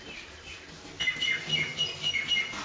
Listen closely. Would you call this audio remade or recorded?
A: recorded